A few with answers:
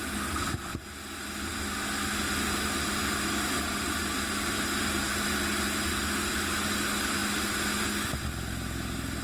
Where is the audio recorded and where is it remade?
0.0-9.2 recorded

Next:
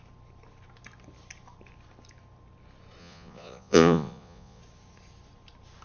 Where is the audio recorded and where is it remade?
0.0-3.0 recorded; 3.0-4.6 remade; 4.6-5.8 recorded

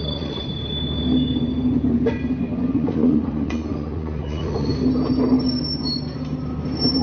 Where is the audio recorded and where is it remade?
0.0-0.4 remade; 0.4-2.7 recorded; 2.7-4.7 remade; 4.7-7.0 recorded

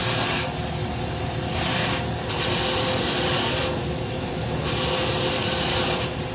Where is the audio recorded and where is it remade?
0.0-6.3 recorded

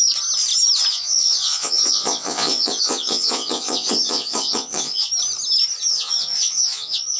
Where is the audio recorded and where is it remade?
0.0-0.9 recorded; 0.9-5.1 remade; 5.1-5.9 recorded; 5.9-7.2 remade